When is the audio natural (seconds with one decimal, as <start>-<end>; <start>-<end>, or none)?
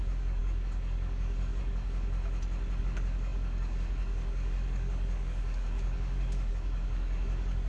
2.2-2.8